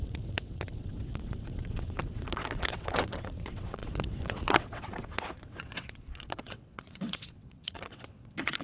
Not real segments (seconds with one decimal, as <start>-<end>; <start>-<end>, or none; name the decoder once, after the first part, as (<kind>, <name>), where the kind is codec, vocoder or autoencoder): 0.0-8.6 (vocoder, WaveNeXt)